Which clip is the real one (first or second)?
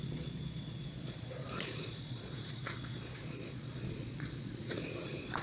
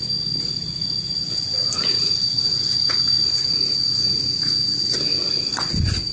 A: second